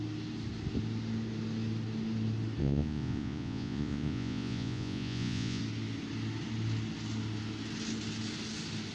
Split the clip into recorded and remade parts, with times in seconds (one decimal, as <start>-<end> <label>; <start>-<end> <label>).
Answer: 0.0-2.6 recorded; 2.6-5.6 remade; 5.6-8.9 recorded